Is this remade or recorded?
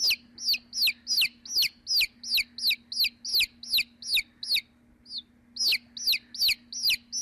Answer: recorded